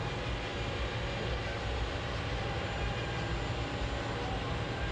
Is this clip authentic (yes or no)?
yes